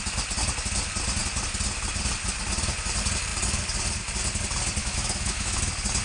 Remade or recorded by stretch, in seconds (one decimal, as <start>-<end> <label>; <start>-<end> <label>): 0.0-4.8 recorded; 4.8-5.6 remade; 5.6-6.0 recorded